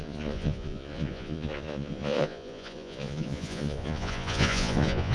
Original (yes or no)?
no